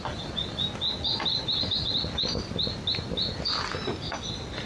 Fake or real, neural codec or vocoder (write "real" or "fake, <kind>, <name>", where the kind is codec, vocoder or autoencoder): real